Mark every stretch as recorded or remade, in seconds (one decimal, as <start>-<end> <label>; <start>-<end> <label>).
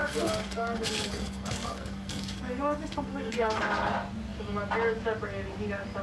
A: 0.0-3.6 remade; 3.6-6.0 recorded